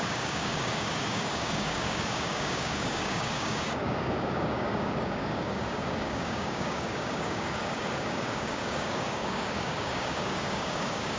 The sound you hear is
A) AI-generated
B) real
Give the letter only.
A